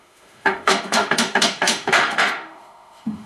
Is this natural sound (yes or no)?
no